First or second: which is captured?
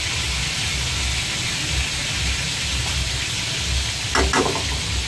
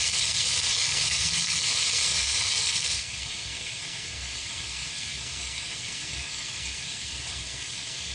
first